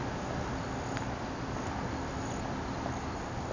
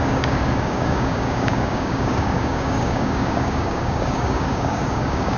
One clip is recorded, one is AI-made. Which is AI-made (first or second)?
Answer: second